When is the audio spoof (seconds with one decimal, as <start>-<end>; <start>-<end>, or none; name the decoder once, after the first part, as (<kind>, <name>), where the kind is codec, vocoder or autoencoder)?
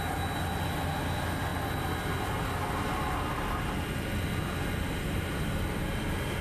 none